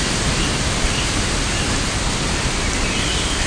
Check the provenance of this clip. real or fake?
real